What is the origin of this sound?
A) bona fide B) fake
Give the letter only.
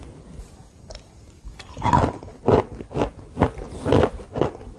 A